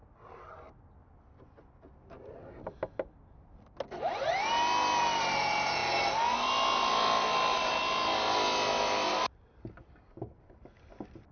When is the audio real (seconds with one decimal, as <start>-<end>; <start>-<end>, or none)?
0.0-11.3